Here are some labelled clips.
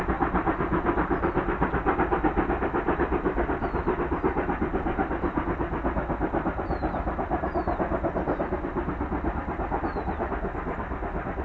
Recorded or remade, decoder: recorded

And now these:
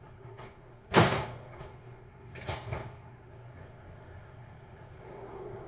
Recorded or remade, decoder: remade, codec, SNAC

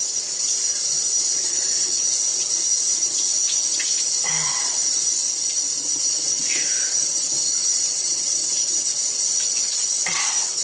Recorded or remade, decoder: recorded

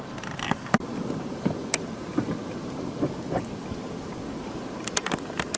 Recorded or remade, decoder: recorded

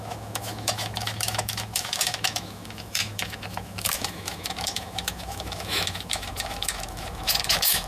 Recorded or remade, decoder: remade, autoencoder, DAC-VAE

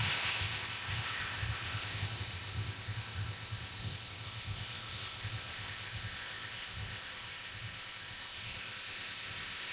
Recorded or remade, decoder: remade, codec, ZipCodec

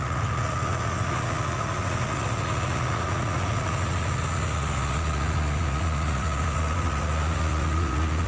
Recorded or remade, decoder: remade, vocoder, Vocos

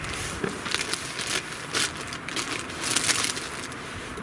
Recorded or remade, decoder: recorded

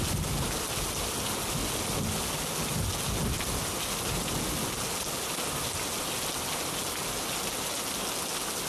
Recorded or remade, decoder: recorded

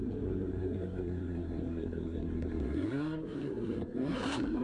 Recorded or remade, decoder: remade, codec, SNAC